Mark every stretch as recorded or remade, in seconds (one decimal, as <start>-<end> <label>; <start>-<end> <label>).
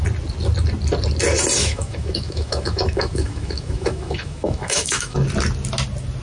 0.0-1.6 recorded; 1.6-5.3 remade; 5.3-6.2 recorded